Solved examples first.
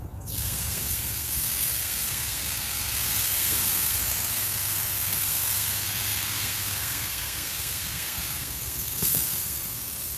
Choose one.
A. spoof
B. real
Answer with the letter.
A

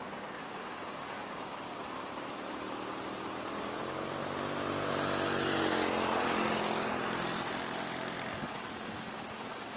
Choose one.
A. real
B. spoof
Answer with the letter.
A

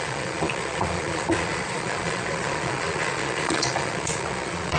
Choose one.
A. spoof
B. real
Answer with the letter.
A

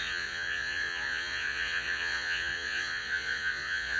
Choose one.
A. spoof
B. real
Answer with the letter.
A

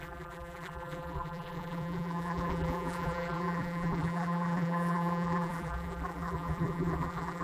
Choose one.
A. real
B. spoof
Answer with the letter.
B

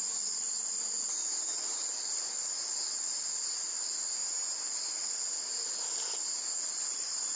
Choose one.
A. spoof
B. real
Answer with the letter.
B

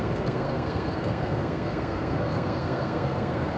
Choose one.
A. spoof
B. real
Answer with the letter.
A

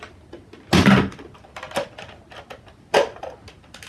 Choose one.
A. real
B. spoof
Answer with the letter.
A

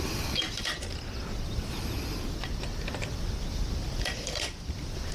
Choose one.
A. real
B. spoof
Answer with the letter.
A